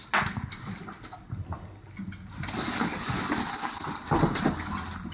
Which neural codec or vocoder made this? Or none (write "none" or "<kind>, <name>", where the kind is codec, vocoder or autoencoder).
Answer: none